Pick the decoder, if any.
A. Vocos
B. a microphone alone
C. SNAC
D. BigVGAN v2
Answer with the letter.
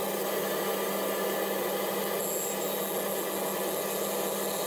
B